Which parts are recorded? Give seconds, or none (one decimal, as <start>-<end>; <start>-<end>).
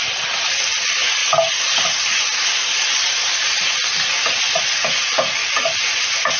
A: 0.0-6.4